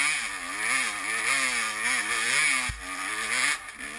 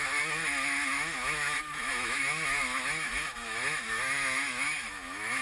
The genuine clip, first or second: first